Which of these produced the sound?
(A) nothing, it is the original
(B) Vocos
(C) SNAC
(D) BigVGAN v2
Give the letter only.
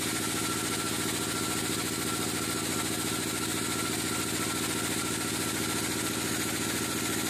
A